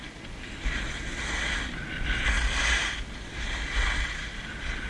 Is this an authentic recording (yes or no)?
yes